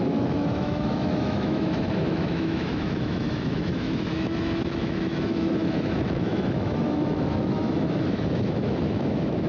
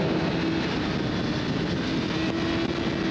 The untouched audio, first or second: second